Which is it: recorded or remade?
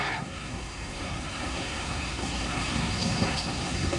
remade